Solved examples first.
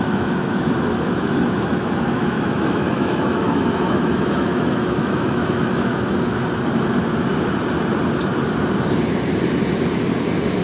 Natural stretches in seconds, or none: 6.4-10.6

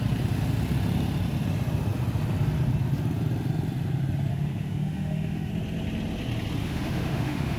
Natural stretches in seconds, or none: 0.0-4.3; 5.5-6.6

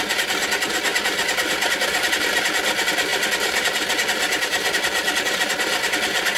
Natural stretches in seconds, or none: 0.0-6.4

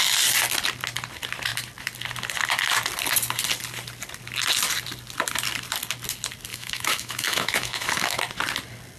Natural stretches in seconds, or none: 0.0-6.5; 8.2-9.0

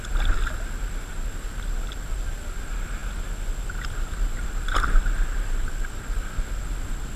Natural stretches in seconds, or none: 0.0-7.2

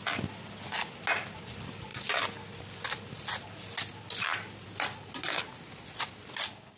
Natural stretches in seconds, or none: 0.0-6.8

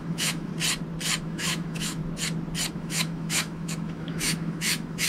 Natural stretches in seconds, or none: 0.5-1.2; 2.0-2.7